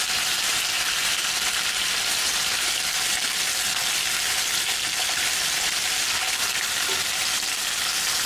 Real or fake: real